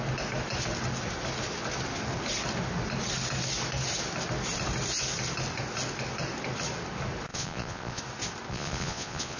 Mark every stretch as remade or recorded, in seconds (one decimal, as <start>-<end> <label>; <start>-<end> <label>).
0.0-7.3 recorded; 7.3-8.0 remade; 8.0-8.5 recorded; 8.5-9.4 remade